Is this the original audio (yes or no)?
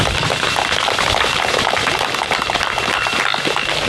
yes